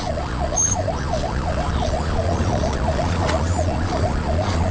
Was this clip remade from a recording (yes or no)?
yes